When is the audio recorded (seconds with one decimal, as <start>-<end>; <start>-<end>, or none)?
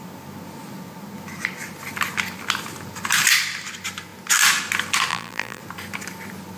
0.0-5.1; 5.6-6.6